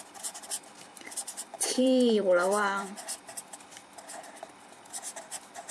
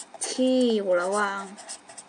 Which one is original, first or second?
second